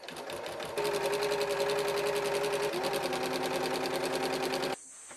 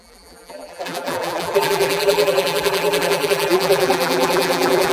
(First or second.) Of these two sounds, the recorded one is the first